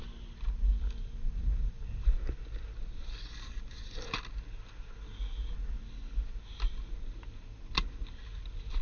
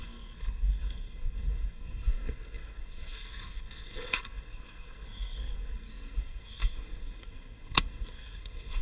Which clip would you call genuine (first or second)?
first